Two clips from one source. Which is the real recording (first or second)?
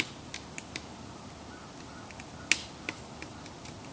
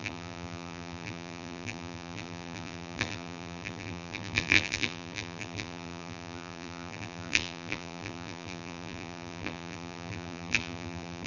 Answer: first